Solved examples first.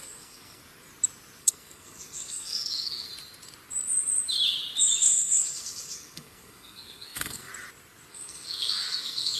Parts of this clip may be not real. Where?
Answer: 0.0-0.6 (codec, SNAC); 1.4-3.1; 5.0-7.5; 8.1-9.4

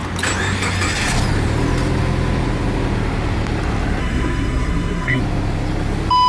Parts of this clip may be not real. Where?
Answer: 4.0-5.2 (codec, SNAC)

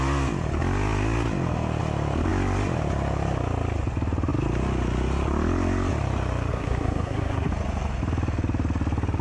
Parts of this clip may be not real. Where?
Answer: 6.5-7.5 (codec, SNAC)

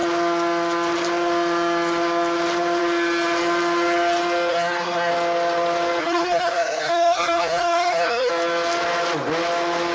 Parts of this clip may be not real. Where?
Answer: 4.5-5.1 (codec, SNAC); 6.0-8.3